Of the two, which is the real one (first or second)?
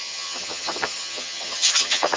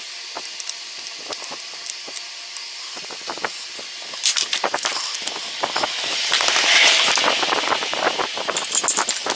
second